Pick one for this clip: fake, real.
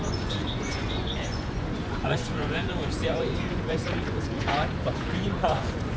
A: fake